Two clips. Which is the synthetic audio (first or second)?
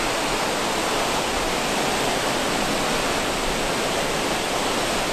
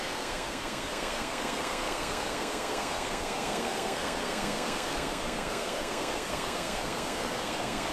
second